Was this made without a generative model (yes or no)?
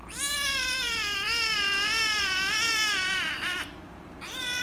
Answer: no